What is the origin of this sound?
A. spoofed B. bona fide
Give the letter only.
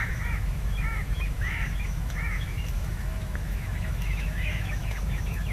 A